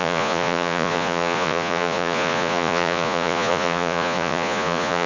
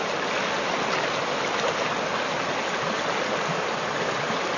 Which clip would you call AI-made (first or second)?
first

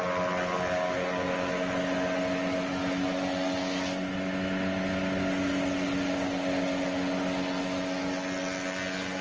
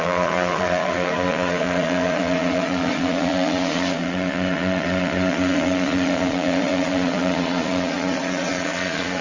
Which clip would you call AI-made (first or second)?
second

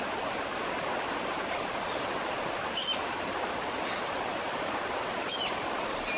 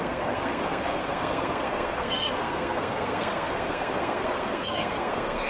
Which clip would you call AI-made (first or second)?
second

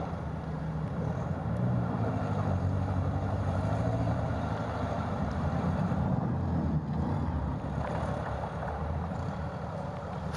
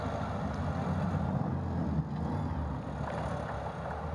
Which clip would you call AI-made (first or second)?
first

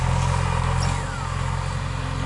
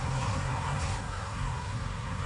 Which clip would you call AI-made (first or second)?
second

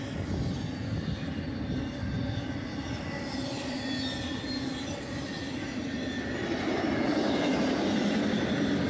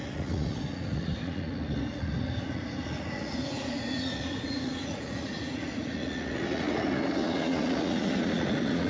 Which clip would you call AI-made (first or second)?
second